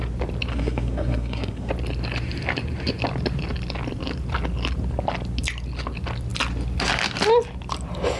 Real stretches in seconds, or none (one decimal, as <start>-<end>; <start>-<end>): 0.0-0.5; 1.7-8.2